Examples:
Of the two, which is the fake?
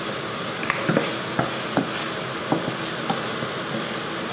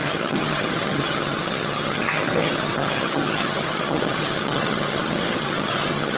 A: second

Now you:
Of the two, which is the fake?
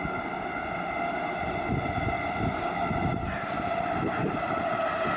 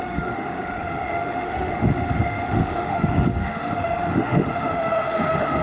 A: second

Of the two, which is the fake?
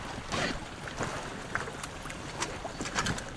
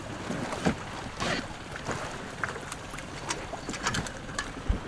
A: first